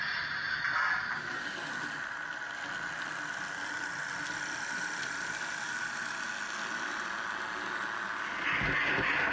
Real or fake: real